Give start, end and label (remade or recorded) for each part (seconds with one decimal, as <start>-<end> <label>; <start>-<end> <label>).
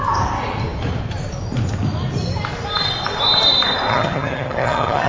0.0-3.9 recorded; 3.9-5.1 remade